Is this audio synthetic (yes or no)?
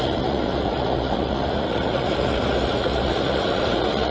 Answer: yes